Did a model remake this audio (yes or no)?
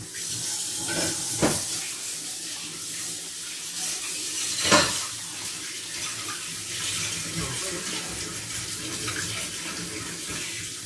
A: no